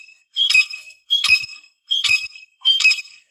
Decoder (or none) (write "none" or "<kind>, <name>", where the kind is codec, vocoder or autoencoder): codec, SNAC